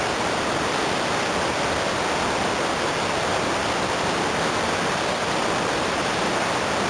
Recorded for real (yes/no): yes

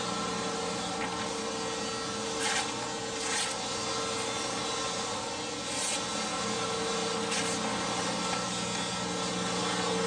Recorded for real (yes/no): yes